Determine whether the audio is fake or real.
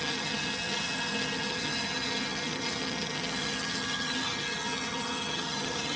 fake